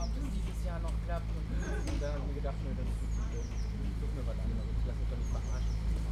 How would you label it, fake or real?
real